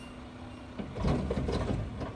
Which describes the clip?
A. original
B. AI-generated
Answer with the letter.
A